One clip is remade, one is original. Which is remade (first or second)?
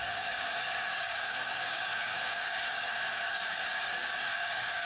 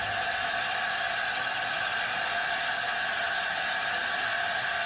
first